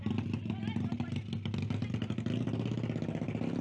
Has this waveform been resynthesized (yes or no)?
no